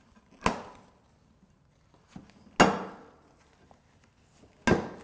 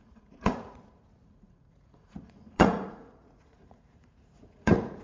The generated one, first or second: second